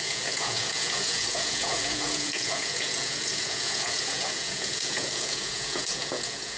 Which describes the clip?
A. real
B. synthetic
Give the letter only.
B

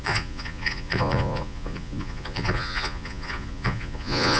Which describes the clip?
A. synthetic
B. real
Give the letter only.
A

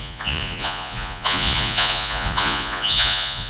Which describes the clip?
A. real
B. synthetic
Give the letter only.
B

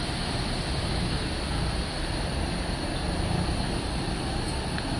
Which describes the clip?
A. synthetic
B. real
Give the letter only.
B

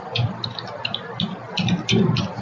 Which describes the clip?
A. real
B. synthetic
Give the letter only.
A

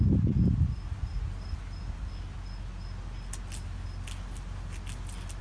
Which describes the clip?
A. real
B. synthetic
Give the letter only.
A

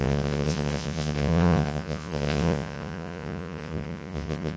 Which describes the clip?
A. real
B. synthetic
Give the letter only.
B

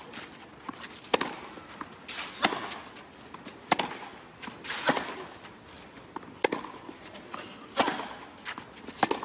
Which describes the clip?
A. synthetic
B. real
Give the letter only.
B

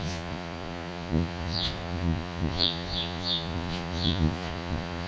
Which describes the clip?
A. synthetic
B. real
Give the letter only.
A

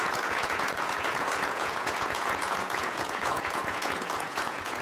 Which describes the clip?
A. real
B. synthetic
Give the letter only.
B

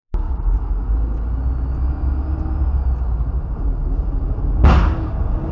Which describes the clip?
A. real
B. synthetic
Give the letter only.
A